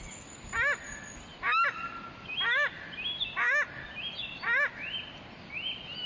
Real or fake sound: real